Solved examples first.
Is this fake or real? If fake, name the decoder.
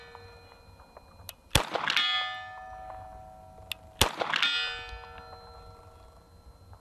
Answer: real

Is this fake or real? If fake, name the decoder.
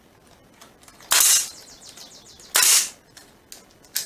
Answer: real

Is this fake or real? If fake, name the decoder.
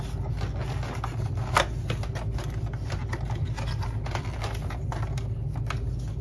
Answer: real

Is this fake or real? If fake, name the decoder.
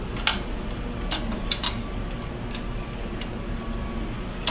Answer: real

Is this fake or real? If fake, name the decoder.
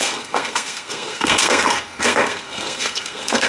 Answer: fake, codec, SNAC